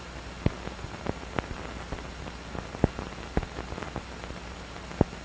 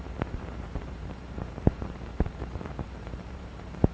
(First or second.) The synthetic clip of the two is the second